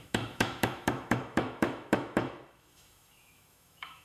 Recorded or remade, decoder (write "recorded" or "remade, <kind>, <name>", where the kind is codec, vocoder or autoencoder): remade, autoencoder, DAC-VAE